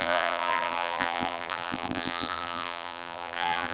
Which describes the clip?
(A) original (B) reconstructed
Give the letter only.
B